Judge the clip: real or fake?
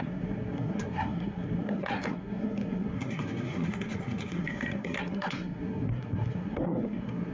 fake